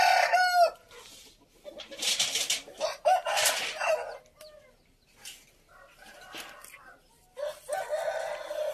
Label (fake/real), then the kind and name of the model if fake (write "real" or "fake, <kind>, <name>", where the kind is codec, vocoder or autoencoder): real